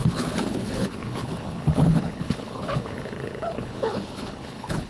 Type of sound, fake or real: fake